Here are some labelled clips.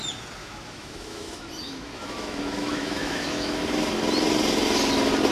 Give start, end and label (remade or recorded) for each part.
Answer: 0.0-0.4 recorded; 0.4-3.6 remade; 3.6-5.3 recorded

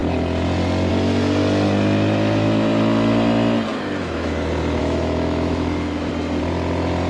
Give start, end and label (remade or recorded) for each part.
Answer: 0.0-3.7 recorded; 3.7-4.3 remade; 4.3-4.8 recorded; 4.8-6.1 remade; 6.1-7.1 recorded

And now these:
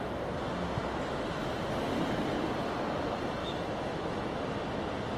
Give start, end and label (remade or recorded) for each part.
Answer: 0.0-3.4 recorded; 3.4-4.4 remade; 4.4-5.2 recorded

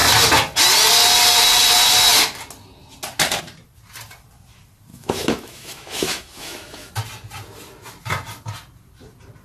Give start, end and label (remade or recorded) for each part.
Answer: 0.0-4.9 recorded; 4.9-6.9 remade; 6.9-9.4 recorded